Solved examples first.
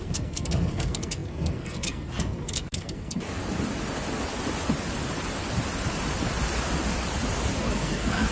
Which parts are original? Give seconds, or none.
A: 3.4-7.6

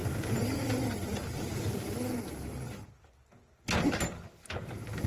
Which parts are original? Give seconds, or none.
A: 0.0-5.1

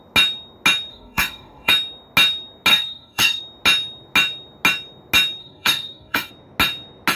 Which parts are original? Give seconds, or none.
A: 0.0-0.9; 1.7-2.7; 3.4-5.4; 6.3-7.2

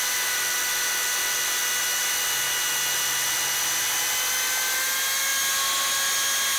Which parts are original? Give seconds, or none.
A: 0.0-6.6

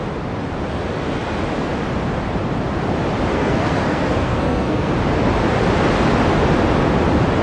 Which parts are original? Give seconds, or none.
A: 0.0-3.3; 4.9-7.4

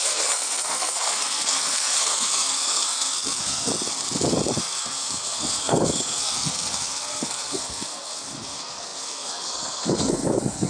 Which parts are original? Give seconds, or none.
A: 3.7-4.6